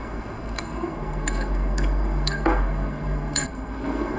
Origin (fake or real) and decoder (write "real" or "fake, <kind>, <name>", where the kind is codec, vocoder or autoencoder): fake, codec, SNAC